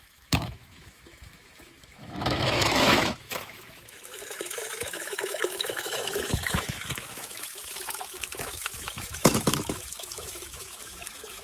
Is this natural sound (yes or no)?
no